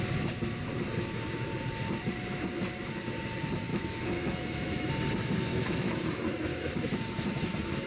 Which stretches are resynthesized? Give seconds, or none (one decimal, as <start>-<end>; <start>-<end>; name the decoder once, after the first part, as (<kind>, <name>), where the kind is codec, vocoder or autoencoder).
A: 3.7-4.9 (autoencoder, DAC-VAE); 5.5-6.0; 6.5-7.0